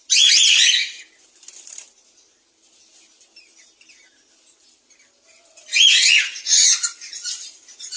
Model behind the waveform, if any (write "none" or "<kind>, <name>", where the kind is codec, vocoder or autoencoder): none